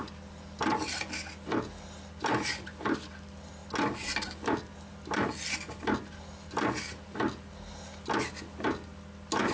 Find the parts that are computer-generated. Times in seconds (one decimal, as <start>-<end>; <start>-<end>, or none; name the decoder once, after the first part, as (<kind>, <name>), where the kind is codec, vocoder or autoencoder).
none